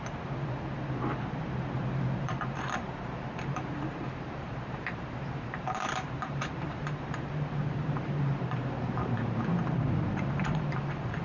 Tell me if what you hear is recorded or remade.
remade